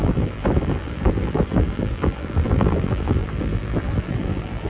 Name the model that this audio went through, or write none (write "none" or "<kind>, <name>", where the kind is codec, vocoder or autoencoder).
vocoder, BigVGAN v2